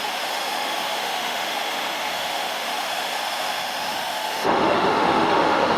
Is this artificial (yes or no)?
yes